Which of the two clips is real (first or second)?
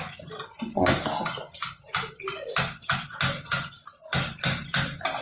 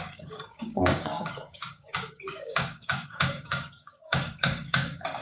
first